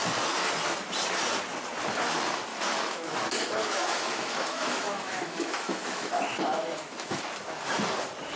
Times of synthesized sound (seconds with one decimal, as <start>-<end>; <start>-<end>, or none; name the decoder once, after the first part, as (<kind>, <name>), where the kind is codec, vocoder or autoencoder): 2.5-7.2 (autoencoder, DAC-VAE)